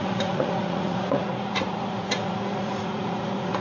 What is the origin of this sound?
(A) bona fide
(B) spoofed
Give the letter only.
B